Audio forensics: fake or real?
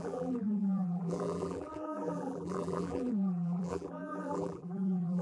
fake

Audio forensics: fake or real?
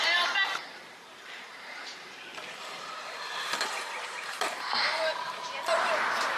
fake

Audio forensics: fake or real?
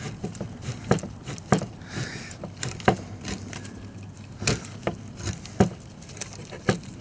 real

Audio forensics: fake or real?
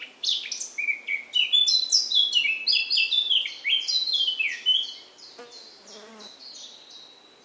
real